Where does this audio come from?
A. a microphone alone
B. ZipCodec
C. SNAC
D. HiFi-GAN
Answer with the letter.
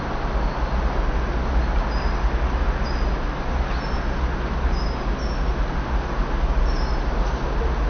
A